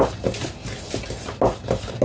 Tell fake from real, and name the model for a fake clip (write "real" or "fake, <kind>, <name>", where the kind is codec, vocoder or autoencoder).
real